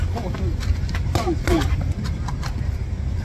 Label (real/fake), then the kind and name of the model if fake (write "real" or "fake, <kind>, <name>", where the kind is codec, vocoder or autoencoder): real